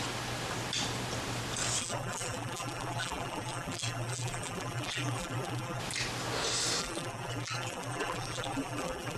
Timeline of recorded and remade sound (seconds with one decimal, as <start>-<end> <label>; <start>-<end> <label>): 0.0-1.8 recorded; 1.8-5.8 remade; 5.8-6.8 recorded; 6.8-9.2 remade